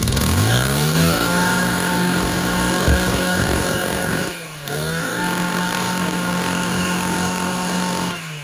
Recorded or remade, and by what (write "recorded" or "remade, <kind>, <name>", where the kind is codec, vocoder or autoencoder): remade, codec, DAC